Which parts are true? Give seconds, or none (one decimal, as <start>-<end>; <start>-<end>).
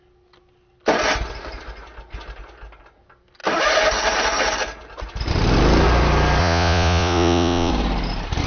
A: 0.0-6.4; 7.7-8.5